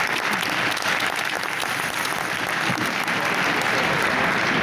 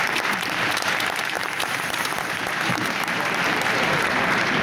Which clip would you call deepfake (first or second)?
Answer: second